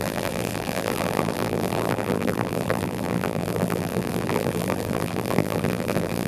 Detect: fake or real fake